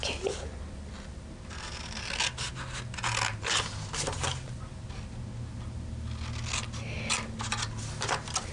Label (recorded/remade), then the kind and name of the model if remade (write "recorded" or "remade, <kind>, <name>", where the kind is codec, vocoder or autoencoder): recorded